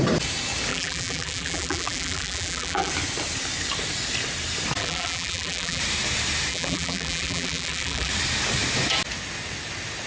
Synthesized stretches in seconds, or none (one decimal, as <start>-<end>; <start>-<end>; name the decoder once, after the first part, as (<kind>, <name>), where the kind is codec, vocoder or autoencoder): 0.7-2.9 (vocoder, BigVGAN v2); 4.8-5.8; 6.5-8.1